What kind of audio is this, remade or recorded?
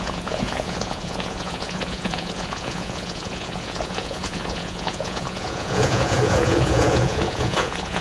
remade